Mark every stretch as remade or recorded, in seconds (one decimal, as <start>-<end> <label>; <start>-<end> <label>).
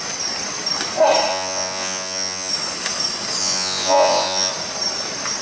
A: 0.0-1.3 recorded; 1.3-2.5 remade; 2.5-3.4 recorded; 3.4-4.5 remade; 4.5-5.4 recorded